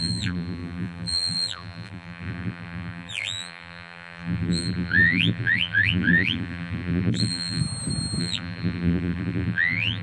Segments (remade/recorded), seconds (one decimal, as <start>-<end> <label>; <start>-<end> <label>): 0.0-7.6 remade; 7.6-8.2 recorded; 8.2-10.0 remade